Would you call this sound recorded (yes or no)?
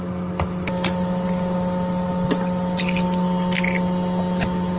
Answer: yes